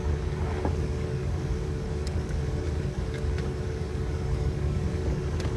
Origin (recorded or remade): remade